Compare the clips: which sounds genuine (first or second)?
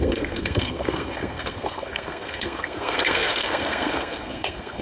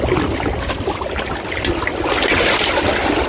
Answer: second